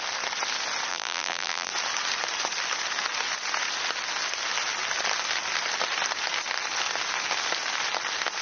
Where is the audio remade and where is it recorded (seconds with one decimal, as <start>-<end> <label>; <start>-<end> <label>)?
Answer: 0.0-0.9 recorded; 0.9-1.7 remade; 1.7-8.4 recorded